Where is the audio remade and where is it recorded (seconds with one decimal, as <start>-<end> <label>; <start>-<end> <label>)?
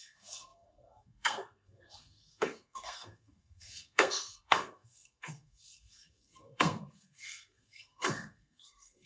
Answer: 0.0-9.1 remade